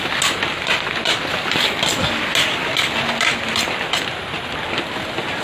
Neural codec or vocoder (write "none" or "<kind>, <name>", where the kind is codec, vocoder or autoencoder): none